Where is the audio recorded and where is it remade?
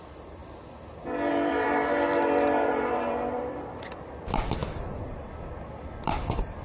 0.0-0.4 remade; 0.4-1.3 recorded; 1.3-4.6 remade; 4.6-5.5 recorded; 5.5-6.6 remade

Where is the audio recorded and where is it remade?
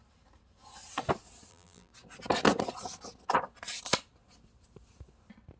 0.0-1.5 recorded; 1.5-1.9 remade; 1.9-5.6 recorded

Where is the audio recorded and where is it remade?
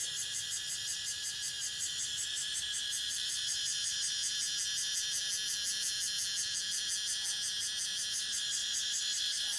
0.0-4.2 remade; 4.2-8.1 recorded; 8.1-9.6 remade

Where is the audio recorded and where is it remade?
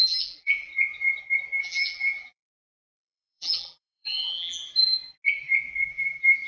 0.0-0.7 remade; 0.7-1.6 recorded; 1.6-4.6 remade; 4.6-5.9 recorded; 5.9-6.5 remade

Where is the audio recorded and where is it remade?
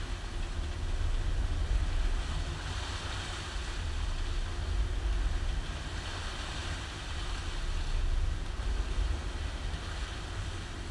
0.0-6.6 recorded; 6.6-7.3 remade; 7.3-10.9 recorded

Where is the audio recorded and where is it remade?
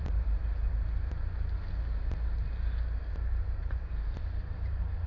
0.0-0.4 remade; 0.4-3.5 recorded; 3.5-5.1 remade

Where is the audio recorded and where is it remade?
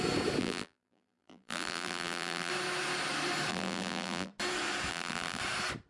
0.0-0.4 recorded; 0.4-2.5 remade; 2.5-3.5 recorded; 3.5-4.3 remade; 4.3-4.9 recorded; 4.9-5.4 remade; 5.4-5.9 recorded